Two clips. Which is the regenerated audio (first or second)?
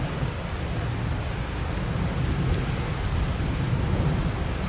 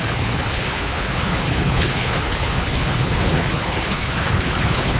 second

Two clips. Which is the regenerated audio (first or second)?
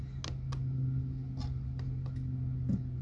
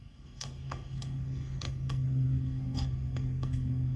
second